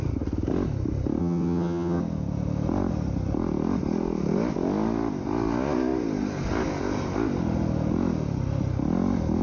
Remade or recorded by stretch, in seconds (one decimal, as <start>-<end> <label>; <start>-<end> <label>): 0.0-1.2 recorded; 1.2-2.0 remade; 2.0-9.4 recorded